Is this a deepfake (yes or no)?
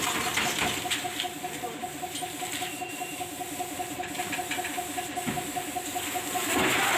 no